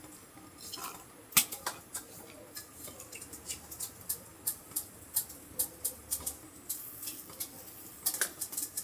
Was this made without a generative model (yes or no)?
yes